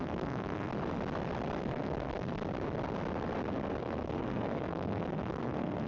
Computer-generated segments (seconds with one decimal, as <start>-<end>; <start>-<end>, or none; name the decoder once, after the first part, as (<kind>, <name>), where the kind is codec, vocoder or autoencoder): 0.0-0.7 (codec, SNAC); 1.6-2.4; 3.8-5.9